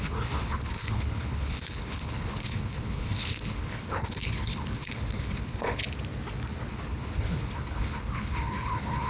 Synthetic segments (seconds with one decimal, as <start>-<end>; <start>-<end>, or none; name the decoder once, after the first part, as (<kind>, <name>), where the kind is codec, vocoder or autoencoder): 0.0-5.8 (codec, HILCodec); 6.7-9.1

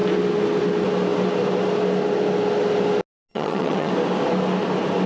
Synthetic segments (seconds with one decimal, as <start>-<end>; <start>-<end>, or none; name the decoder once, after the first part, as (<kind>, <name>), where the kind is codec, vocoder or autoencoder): 3.3-3.9 (vocoder, HiFi-GAN)

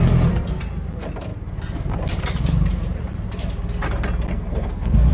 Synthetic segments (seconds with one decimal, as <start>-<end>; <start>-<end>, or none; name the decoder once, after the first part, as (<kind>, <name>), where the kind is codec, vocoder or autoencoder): 4.3-5.1 (codec, SNAC)